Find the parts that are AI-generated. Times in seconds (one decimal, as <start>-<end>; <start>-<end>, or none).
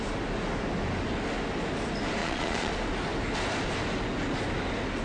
2.2-2.7